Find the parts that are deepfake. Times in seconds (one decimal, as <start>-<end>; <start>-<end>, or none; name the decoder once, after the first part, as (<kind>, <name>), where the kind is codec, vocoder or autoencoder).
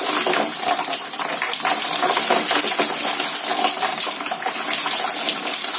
0.0-3.1 (vocoder, BigVGAN v2); 3.5-4.5